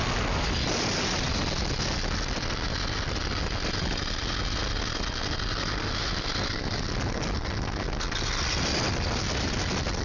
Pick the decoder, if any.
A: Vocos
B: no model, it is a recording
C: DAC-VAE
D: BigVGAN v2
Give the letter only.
B